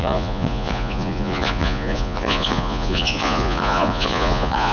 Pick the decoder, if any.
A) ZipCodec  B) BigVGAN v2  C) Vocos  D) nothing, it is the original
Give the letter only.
C